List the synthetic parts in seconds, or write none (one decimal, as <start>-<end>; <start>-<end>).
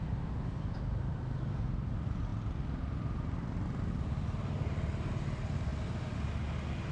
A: none